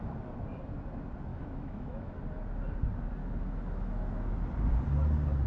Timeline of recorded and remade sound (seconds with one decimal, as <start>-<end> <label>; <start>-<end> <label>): 0.0-1.3 recorded; 1.3-2.1 remade; 2.1-3.2 recorded; 3.2-4.3 remade; 4.3-5.5 recorded